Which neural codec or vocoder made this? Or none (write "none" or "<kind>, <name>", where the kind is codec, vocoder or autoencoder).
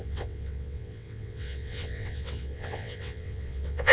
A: vocoder, WaveNeXt